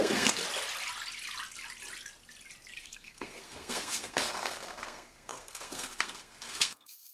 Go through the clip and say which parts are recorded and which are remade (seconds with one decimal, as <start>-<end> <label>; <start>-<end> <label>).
0.0-0.4 remade; 0.4-2.8 recorded; 2.8-7.1 remade